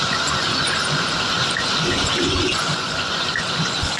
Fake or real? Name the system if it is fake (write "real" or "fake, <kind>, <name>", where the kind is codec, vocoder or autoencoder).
fake, vocoder, Vocos